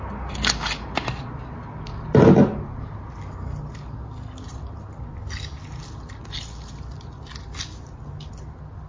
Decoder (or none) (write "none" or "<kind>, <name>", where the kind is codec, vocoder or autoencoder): none